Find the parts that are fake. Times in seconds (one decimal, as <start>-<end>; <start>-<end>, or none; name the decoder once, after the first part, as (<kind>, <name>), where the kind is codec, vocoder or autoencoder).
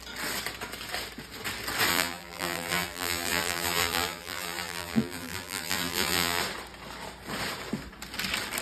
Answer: 1.9-6.4 (vocoder, BigVGAN v2)